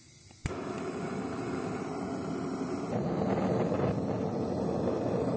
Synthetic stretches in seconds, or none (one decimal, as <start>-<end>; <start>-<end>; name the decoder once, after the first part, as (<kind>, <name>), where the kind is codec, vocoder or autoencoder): none